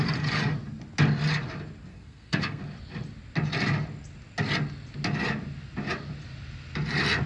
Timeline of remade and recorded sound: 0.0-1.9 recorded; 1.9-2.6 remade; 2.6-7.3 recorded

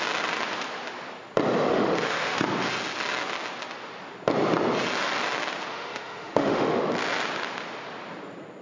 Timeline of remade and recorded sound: 0.0-1.7 recorded; 1.7-2.4 remade; 2.4-5.7 recorded; 5.7-6.8 remade; 6.8-8.6 recorded

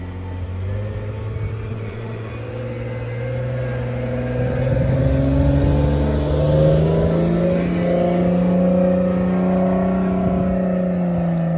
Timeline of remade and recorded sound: 0.0-1.7 recorded; 1.7-2.3 remade; 2.3-11.6 recorded

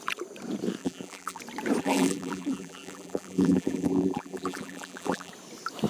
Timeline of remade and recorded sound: 0.0-0.8 recorded; 0.8-1.4 remade; 1.4-1.8 recorded; 1.8-5.3 remade; 5.3-5.9 recorded

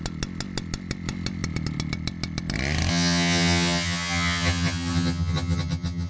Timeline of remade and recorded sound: 0.0-2.9 recorded; 2.9-6.1 remade

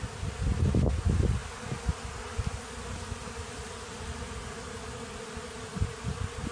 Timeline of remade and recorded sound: 0.0-6.5 recorded